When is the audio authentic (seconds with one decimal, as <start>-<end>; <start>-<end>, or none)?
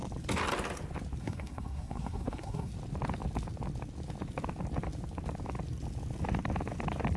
0.0-1.2; 2.7-7.2